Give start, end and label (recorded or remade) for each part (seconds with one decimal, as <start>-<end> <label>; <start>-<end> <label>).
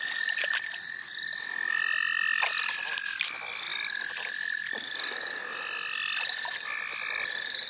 0.0-7.7 recorded